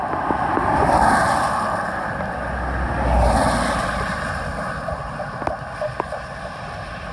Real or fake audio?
real